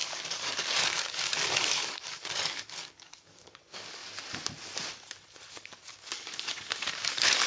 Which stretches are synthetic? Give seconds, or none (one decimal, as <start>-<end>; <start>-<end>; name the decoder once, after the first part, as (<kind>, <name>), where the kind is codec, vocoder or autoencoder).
0.0-4.0 (codec, DAC); 5.5-7.5